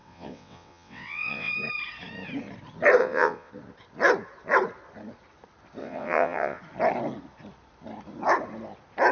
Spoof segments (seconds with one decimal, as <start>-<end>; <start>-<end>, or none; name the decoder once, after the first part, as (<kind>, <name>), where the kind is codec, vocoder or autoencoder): 0.0-1.5 (vocoder, WaveNeXt); 3.0-3.5; 5.8-6.6